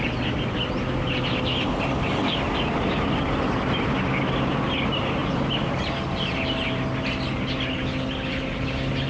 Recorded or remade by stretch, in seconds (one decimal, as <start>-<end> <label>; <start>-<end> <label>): 0.0-9.1 recorded